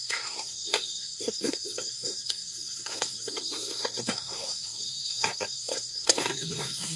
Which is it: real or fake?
fake